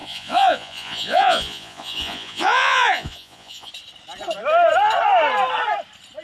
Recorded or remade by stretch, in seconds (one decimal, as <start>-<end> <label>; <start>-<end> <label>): 0.0-3.7 remade; 3.7-6.2 recorded